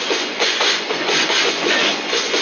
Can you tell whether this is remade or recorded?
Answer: remade